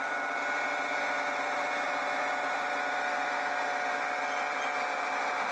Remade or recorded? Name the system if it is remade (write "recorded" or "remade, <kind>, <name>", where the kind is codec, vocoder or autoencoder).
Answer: recorded